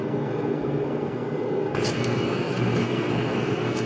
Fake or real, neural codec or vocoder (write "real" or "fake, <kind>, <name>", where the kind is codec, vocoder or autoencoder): fake, codec, SNAC